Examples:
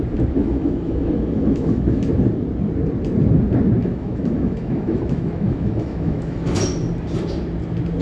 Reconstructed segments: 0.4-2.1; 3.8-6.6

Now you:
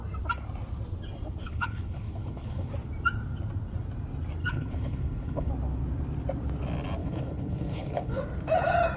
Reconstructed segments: 1.4-2.7; 4.4-5.5; 7.0-8.2

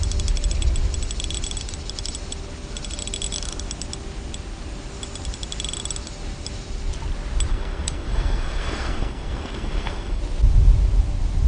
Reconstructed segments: 7.5-10.2

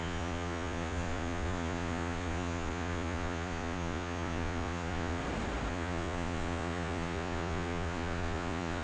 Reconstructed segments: 0.0-5.2; 5.7-8.8